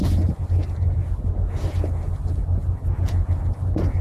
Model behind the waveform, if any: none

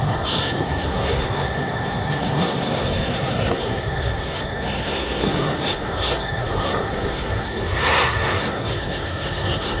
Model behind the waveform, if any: codec, SNAC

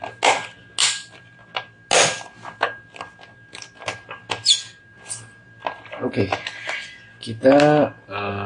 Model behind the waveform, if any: none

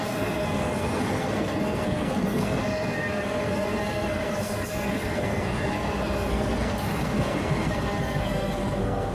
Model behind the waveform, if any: codec, SNAC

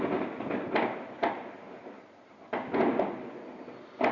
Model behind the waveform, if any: none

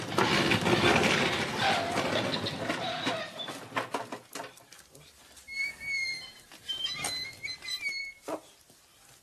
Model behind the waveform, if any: none